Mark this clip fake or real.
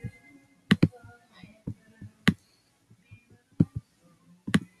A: real